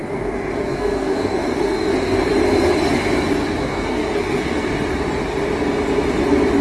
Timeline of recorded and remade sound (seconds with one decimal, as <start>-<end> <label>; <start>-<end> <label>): 0.0-2.3 remade; 2.3-3.6 recorded; 3.6-4.7 remade; 4.7-6.6 recorded

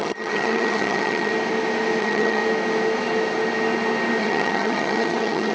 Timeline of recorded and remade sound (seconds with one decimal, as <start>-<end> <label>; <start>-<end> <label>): 0.0-1.3 remade; 1.3-2.0 recorded; 2.0-2.4 remade; 2.4-4.2 recorded; 4.2-5.5 remade